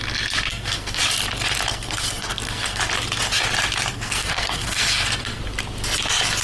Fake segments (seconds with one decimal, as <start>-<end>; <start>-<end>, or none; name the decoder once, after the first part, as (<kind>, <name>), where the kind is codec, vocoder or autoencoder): 0.5-1.0 (codec, SNAC); 1.7-2.8; 3.9-5.4